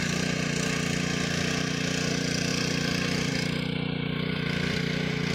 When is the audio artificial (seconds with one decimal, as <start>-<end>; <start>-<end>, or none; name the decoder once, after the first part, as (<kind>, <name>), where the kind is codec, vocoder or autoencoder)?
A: none